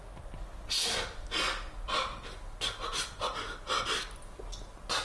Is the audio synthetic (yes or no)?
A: no